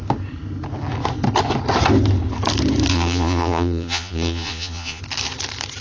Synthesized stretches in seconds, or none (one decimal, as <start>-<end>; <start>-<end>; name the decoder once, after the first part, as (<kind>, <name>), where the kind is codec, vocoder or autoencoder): 2.9-5.0 (vocoder, Vocos)